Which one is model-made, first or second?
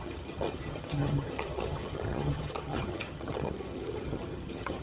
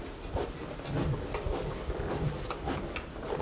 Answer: first